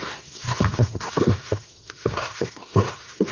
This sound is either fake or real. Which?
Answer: fake